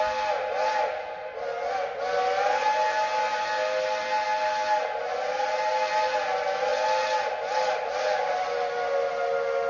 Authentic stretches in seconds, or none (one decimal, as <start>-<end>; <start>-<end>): 0.0-9.7

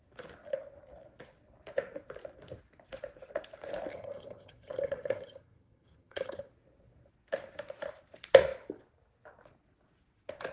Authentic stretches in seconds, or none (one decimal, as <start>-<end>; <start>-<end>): 0.0-3.9; 6.5-10.5

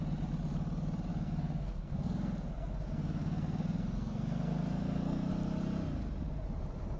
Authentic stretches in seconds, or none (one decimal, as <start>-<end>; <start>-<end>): 0.0-1.1; 5.3-7.0

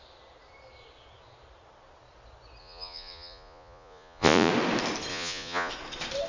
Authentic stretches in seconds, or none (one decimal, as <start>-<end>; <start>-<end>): 0.0-2.6; 4.5-5.1; 5.7-6.3

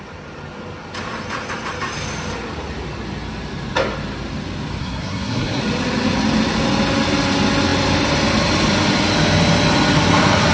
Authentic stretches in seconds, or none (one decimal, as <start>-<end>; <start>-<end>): 0.0-4.8; 5.6-10.5

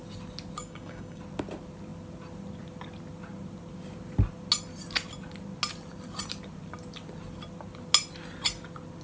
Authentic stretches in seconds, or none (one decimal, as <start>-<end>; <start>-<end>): 0.0-0.6; 1.2-9.0

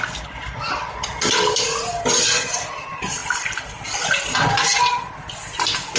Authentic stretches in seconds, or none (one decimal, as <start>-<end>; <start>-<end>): 0.0-6.0

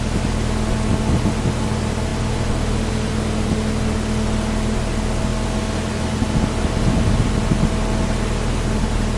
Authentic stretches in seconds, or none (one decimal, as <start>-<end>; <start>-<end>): 0.0-9.2